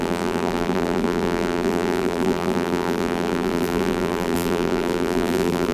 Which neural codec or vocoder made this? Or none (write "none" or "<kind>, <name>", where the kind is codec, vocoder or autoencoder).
vocoder, BigVGAN v2